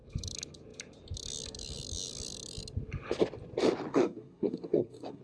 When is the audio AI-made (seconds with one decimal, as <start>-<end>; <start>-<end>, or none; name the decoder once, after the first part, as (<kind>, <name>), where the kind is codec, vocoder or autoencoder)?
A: 3.9-5.2 (codec, SNAC)